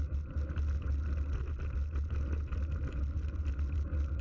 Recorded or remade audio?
recorded